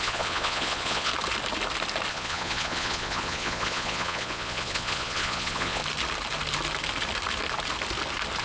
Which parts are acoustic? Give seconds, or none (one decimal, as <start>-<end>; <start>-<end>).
1.1-2.1; 5.8-8.4